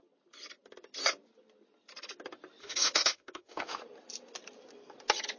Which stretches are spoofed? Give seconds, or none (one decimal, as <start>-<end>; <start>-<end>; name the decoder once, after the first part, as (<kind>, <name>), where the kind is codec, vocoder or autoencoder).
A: 2.6-3.8 (autoencoder, DAC-VAE)